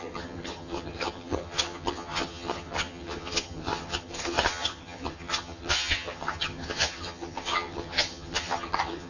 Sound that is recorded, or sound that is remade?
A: remade